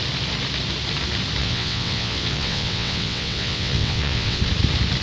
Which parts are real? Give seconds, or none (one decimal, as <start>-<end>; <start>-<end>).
0.0-1.4; 4.4-5.0